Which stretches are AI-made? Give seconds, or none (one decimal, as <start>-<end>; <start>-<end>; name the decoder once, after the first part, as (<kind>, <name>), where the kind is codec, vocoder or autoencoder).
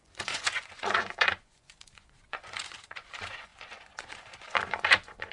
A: 0.0-5.3 (vocoder, Vocos)